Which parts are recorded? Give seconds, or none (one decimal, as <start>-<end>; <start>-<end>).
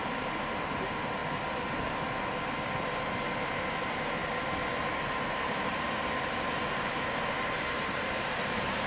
1.2-3.8; 4.2-5.3